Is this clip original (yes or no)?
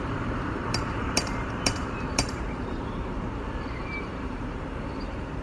no